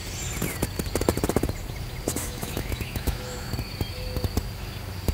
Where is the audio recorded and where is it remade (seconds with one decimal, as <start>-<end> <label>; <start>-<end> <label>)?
0.0-2.2 recorded; 2.2-3.5 remade; 3.5-5.1 recorded